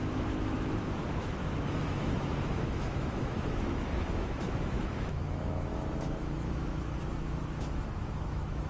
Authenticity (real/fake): fake